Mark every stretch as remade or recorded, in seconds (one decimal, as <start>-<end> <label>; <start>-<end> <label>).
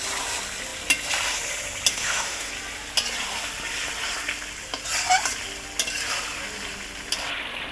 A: 0.0-1.9 recorded; 1.9-2.5 remade; 2.5-7.7 recorded